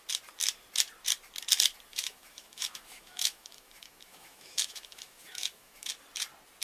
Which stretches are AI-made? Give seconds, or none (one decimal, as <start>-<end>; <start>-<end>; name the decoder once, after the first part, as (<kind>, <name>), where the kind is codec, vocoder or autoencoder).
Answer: 1.9-5.9 (autoencoder, DAC-VAE)